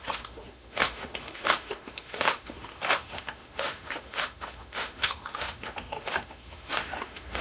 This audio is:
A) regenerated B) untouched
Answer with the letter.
A